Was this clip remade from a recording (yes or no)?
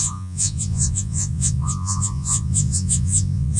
yes